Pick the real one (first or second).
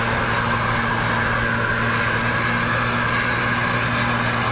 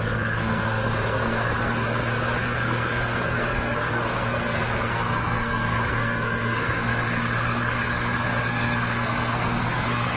first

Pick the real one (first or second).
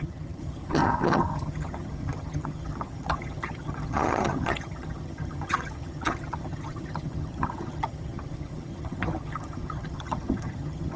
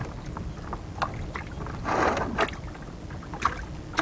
second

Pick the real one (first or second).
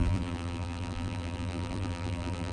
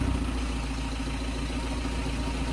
second